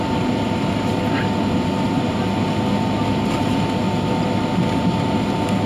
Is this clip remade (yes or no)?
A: no